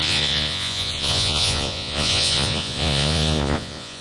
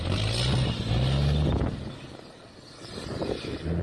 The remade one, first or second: first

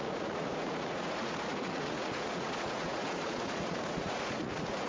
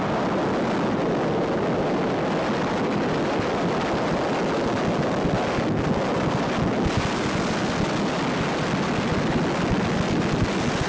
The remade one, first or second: first